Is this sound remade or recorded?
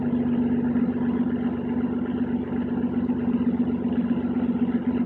recorded